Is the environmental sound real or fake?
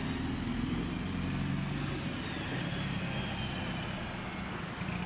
real